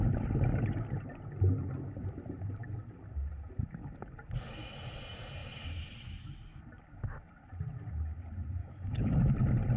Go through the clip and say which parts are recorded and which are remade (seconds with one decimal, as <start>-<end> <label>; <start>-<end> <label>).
0.0-8.6 recorded; 8.6-9.3 remade; 9.3-9.8 recorded